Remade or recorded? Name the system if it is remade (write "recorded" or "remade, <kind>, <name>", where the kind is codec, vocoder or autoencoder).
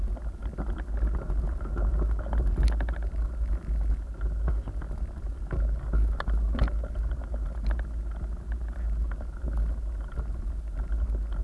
recorded